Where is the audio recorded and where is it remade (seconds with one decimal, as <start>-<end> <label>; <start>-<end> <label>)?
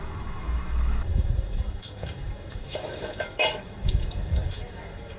0.0-5.2 remade